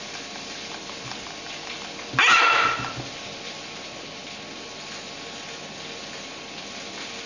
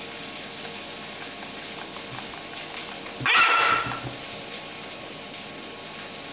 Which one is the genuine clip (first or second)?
second